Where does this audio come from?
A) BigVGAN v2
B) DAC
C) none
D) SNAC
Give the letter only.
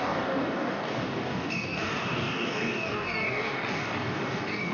B